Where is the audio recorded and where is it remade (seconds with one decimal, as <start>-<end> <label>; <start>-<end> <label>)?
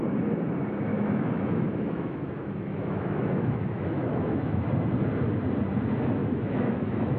0.0-0.9 recorded; 0.9-4.6 remade; 4.6-6.2 recorded; 6.2-7.2 remade